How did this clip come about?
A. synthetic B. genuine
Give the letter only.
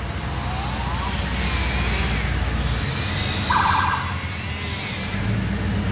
B